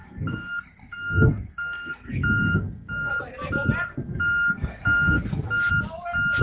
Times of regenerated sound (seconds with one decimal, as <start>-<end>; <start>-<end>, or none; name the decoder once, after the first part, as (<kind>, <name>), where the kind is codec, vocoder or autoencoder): 0.0-3.1 (codec, SNAC); 3.9-5.7